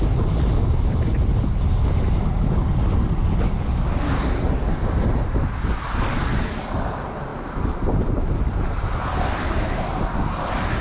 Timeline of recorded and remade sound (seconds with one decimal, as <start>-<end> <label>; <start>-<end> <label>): 0.0-10.8 recorded